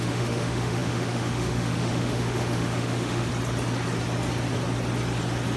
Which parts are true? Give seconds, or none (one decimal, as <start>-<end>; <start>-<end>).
3.3-5.6